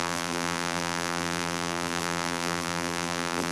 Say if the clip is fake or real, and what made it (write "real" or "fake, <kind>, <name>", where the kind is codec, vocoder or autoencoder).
fake, vocoder, BigVGAN v2